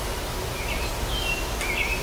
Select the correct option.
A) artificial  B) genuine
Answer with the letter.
B